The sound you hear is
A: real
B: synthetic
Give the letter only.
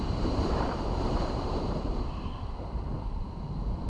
B